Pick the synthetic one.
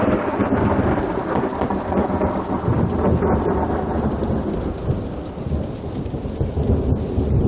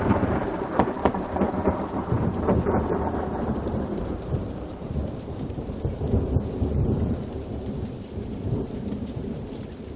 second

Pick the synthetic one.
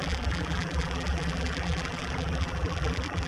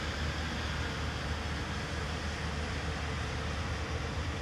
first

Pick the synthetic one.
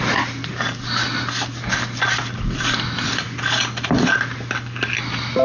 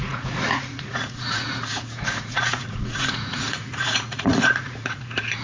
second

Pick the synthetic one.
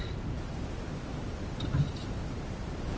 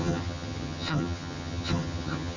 second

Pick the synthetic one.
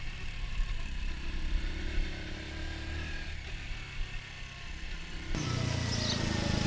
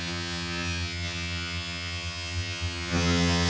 second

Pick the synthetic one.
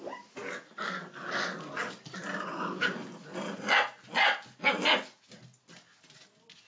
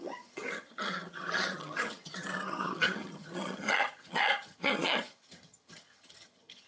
second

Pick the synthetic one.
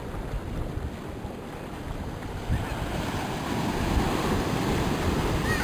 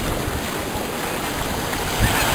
first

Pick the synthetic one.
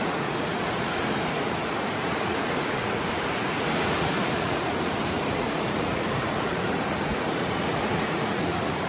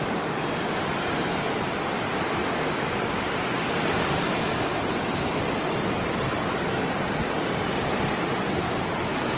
first